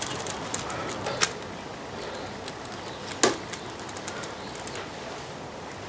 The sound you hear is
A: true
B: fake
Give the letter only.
A